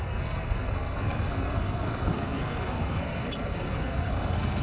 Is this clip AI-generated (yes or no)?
yes